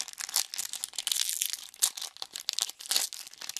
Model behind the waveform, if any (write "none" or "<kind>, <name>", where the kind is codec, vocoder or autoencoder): none